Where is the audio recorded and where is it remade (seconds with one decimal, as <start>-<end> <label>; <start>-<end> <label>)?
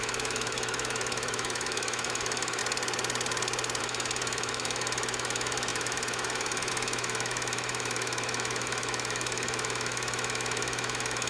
0.0-2.6 remade; 2.6-3.8 recorded; 3.8-11.3 remade